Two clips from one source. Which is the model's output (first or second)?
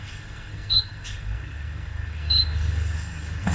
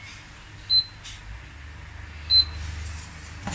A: first